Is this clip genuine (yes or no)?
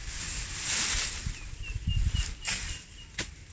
yes